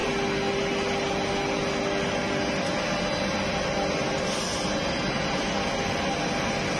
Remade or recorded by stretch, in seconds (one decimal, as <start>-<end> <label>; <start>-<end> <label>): 0.0-6.8 recorded